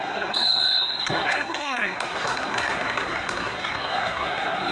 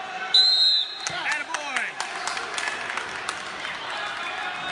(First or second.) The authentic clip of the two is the second